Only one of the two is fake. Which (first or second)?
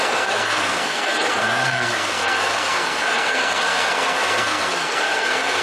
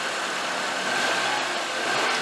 first